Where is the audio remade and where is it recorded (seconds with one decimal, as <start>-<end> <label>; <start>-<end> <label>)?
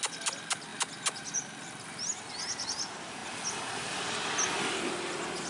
0.0-5.5 recorded